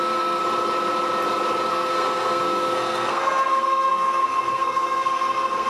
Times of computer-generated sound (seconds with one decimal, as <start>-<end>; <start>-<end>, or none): 0.0-0.4; 1.7-5.7